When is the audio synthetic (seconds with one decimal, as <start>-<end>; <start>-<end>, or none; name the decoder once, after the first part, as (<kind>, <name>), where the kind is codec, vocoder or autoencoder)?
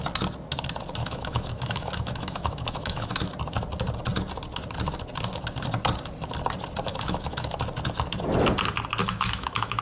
1.0-3.3 (autoencoder, DAC-VAE); 6.9-7.5; 9.0-9.8